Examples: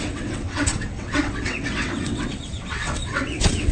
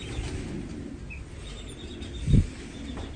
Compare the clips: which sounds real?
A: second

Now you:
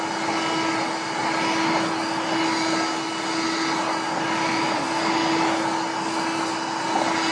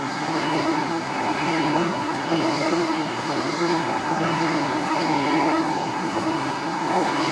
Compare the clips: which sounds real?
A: first